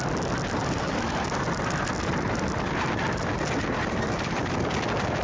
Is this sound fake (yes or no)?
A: no